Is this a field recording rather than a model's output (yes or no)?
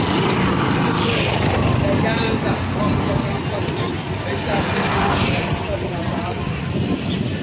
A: yes